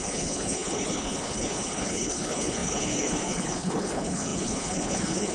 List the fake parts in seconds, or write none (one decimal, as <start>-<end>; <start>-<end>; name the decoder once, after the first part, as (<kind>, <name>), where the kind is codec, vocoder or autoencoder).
0.0-5.3 (codec, HILCodec)